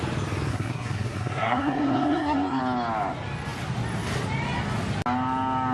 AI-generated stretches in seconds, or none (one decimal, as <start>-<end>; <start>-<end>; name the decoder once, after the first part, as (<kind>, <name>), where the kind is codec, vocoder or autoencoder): 0.5-2.6 (codec, SNAC)